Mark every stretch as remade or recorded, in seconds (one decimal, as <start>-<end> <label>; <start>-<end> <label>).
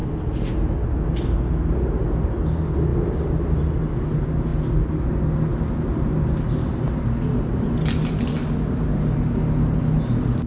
0.0-10.5 recorded